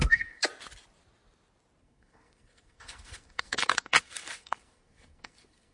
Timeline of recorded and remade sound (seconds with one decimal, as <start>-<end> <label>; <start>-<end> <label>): 0.0-0.4 remade; 0.4-1.8 recorded; 1.8-5.7 remade